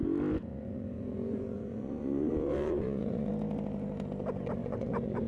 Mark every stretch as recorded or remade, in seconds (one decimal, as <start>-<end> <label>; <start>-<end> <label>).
0.0-0.5 recorded; 0.5-3.3 remade; 3.3-4.6 recorded; 4.6-5.3 remade